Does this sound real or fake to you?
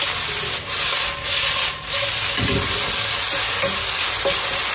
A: real